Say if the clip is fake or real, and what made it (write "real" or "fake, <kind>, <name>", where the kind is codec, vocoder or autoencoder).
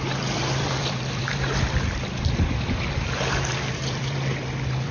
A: fake, vocoder, BigVGAN v2